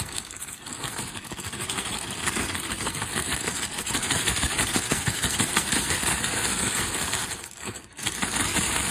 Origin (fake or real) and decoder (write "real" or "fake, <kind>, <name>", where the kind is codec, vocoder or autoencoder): fake, codec, SNAC